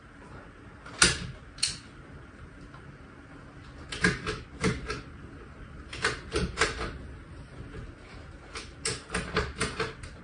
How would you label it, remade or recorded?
recorded